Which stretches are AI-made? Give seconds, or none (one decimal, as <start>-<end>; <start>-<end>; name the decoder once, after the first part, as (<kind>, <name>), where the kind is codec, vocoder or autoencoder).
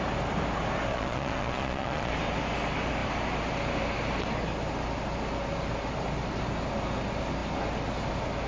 0.9-2.1 (vocoder, Vocos)